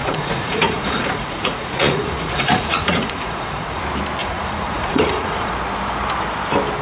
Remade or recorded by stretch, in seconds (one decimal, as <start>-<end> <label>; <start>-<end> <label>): 0.0-3.8 remade; 3.8-4.2 recorded; 4.2-5.5 remade; 5.5-6.8 recorded